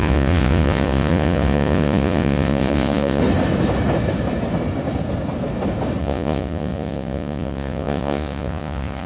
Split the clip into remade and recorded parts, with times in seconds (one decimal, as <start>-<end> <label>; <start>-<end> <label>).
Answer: 0.0-3.2 remade; 3.2-6.0 recorded; 6.0-9.1 remade